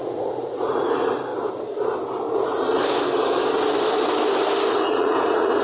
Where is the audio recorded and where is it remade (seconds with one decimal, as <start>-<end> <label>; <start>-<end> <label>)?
0.0-1.3 remade; 1.3-4.7 recorded; 4.7-5.6 remade